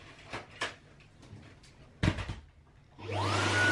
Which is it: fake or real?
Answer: real